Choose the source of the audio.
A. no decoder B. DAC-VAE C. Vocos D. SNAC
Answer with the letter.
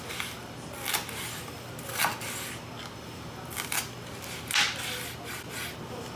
A